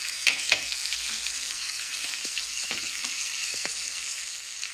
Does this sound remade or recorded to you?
remade